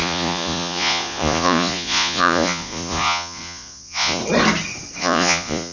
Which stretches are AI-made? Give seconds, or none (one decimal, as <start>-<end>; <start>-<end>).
0.0-4.2; 5.0-5.7